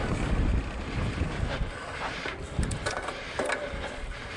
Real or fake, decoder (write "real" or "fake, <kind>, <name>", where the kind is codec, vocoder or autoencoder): real